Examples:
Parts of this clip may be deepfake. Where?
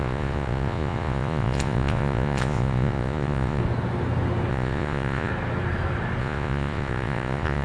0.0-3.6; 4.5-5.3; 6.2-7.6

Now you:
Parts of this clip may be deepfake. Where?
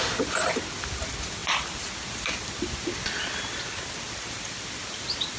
none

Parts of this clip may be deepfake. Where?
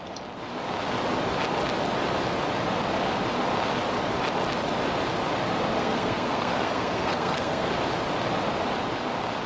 5.8-7.7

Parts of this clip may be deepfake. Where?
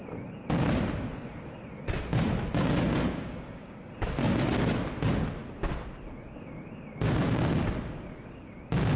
3.1-3.9